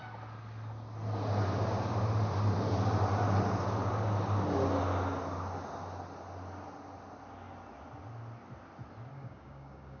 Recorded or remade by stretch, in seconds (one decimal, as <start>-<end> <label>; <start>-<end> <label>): 0.0-9.1 recorded; 9.1-10.0 remade